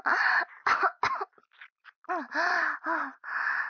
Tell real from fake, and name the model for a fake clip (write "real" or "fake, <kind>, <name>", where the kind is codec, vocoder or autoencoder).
real